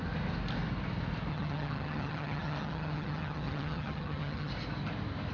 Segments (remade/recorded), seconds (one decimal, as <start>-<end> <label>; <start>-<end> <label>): 0.0-1.3 recorded; 1.3-4.5 remade; 4.5-5.3 recorded